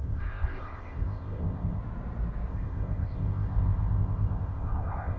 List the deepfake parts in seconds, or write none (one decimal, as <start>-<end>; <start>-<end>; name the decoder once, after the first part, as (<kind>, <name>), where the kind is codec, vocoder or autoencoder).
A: 0.0-1.8 (codec, ZipCodec); 2.5-5.2